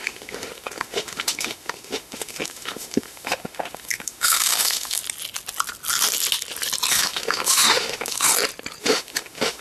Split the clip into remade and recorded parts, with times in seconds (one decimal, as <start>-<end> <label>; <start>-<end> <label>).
0.0-5.0 remade; 5.0-6.9 recorded; 6.9-8.3 remade; 8.3-8.8 recorded; 8.8-9.6 remade